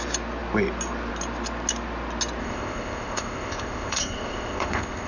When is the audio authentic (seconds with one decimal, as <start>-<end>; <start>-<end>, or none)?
0.0-2.4